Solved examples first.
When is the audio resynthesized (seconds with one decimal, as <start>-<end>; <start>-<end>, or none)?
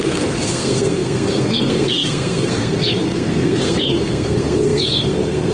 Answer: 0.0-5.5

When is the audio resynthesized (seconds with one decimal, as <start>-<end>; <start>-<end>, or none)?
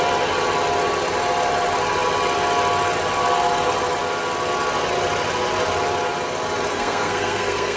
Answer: 6.7-7.8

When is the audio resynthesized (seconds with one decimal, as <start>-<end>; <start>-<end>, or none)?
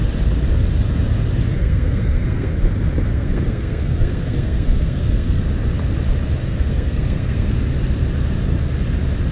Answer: 1.6-2.5; 3.1-5.4; 6.4-7.5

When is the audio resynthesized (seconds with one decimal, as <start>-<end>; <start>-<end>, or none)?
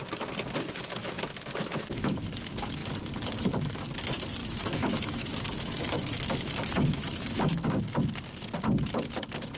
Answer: 1.0-2.4; 4.4-7.8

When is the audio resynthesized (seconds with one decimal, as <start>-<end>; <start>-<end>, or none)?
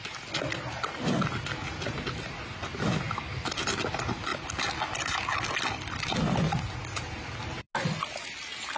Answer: none